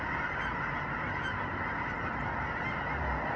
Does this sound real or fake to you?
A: real